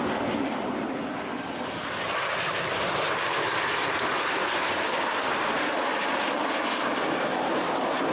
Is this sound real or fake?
real